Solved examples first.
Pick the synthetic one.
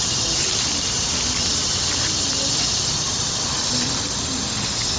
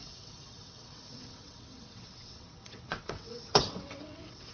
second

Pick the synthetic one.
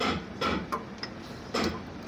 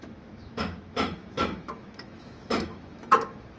second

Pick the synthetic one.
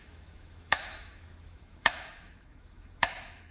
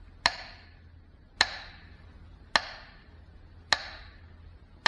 first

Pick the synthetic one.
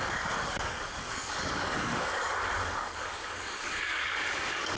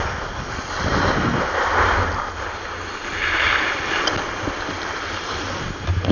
first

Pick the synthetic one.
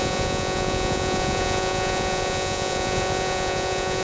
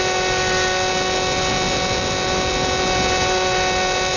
first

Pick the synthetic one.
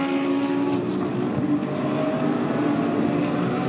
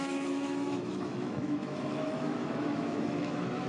second